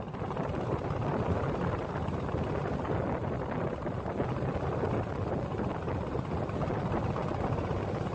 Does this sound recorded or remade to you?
recorded